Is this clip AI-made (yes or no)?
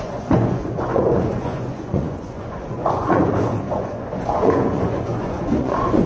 yes